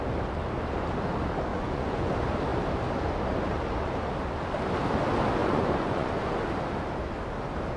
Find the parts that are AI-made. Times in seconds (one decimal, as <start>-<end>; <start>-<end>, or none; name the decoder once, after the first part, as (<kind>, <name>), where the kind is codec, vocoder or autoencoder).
1.5-2.1 (vocoder, Vocos); 5.4-6.3